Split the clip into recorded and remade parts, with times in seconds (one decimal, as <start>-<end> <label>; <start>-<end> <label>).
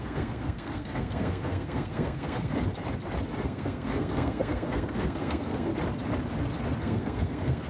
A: 0.0-2.5 remade; 2.5-3.4 recorded; 3.4-5.7 remade; 5.7-6.8 recorded; 6.8-7.7 remade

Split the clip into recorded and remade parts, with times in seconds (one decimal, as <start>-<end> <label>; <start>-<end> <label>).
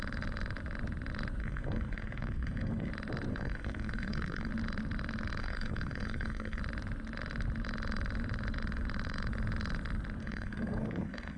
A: 0.0-1.4 recorded; 1.4-2.9 remade; 2.9-3.3 recorded; 3.3-4.5 remade; 4.5-5.4 recorded; 5.4-6.6 remade; 6.6-10.2 recorded; 10.2-11.4 remade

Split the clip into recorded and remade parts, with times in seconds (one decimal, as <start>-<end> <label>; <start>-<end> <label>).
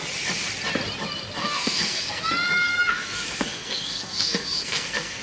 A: 0.0-1.4 recorded; 1.4-2.2 remade; 2.2-2.7 recorded; 2.7-5.2 remade